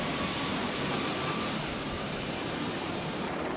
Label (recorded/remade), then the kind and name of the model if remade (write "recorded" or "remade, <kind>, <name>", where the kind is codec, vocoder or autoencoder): remade, vocoder, BigVGAN v2